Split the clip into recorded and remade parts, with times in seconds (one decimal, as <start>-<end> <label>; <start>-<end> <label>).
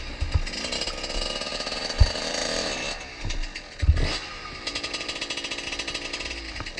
0.0-1.5 recorded; 1.5-2.7 remade; 2.7-4.3 recorded; 4.3-5.2 remade; 5.2-6.8 recorded